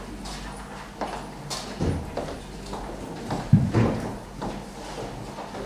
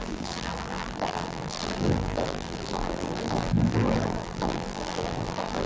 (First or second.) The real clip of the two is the first